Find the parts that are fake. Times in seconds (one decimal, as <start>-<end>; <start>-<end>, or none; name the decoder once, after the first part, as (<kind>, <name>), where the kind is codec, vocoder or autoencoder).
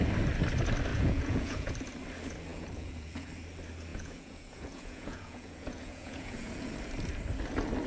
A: 0.9-1.7 (vocoder, Vocos); 2.5-3.3; 3.9-6.7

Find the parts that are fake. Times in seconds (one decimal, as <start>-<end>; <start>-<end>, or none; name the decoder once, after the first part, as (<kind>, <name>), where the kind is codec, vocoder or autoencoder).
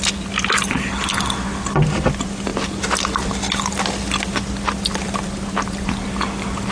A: none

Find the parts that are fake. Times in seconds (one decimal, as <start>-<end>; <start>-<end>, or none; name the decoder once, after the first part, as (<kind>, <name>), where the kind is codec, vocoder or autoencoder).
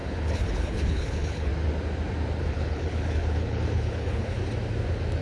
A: 0.0-1.5 (codec, HILCodec); 2.4-4.4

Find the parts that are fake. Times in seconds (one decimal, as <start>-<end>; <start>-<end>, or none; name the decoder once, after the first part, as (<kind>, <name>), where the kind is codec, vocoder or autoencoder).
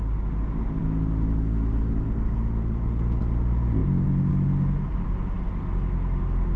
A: none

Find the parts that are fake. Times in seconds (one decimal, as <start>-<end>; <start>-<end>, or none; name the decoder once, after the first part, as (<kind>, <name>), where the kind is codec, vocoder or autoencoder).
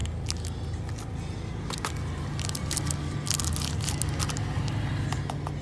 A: none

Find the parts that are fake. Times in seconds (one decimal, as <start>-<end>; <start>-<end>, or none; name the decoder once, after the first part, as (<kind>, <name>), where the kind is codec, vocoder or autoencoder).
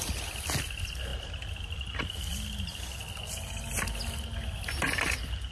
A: none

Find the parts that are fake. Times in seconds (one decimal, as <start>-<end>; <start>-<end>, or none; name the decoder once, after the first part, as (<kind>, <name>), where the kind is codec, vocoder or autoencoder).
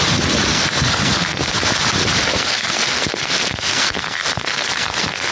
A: 0.5-1.5 (codec, SNAC); 2.0-5.3